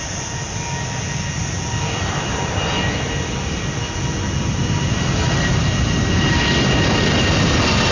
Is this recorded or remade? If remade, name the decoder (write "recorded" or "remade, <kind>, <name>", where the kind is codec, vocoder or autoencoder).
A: recorded